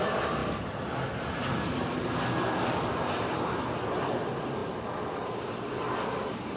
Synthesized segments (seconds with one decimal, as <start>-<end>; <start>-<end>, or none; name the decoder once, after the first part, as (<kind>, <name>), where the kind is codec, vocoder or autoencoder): none